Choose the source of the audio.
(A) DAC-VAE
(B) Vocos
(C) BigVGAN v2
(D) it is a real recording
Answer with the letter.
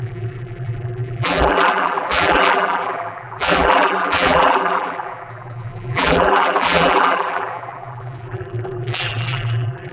C